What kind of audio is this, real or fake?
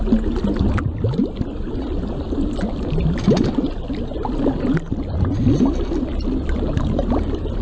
real